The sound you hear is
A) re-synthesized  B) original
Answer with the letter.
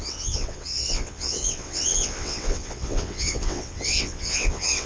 A